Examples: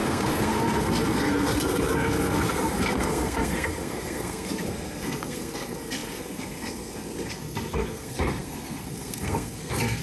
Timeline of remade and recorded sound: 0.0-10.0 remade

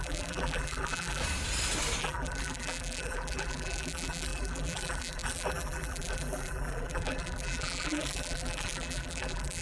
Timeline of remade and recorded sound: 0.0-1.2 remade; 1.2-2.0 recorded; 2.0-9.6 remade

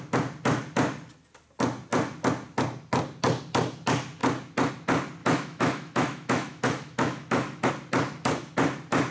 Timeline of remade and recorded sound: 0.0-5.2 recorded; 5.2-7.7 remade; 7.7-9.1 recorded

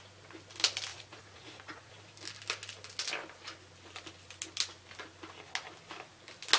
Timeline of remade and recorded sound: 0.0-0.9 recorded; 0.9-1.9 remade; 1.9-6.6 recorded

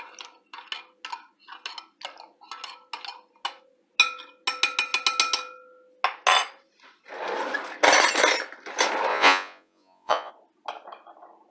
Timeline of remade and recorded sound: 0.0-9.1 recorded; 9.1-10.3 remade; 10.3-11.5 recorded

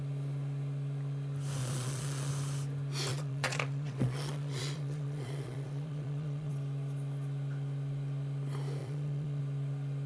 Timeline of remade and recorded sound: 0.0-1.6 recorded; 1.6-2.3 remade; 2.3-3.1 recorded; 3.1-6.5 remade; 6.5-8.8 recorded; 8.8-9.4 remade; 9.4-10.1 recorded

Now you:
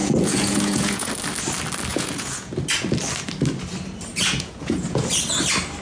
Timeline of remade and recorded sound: 0.0-1.1 remade; 1.1-1.9 recorded; 1.9-2.5 remade; 2.5-4.1 recorded; 4.1-5.1 remade; 5.1-5.8 recorded

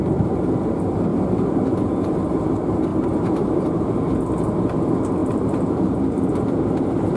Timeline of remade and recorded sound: 0.0-1.1 recorded; 1.1-1.7 remade; 1.7-2.9 recorded; 2.9-3.8 remade; 3.8-5.2 recorded; 5.2-6.4 remade; 6.4-7.2 recorded